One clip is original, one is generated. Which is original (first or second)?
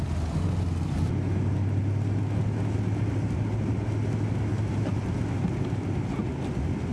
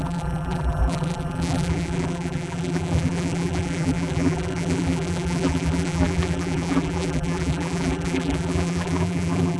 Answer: first